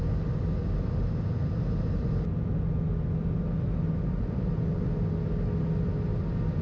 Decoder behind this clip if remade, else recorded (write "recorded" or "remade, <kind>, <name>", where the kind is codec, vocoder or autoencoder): recorded